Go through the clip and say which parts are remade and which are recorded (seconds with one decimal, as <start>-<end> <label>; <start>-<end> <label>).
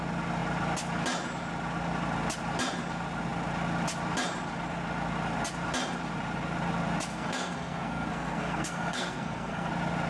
0.0-7.1 recorded; 7.1-9.7 remade; 9.7-10.1 recorded